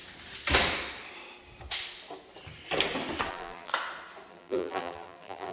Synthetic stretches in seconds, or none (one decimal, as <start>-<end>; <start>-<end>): 3.3-3.7; 4.3-5.5